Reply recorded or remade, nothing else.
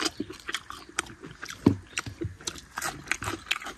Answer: recorded